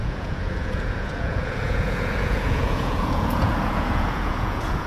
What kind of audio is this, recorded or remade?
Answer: remade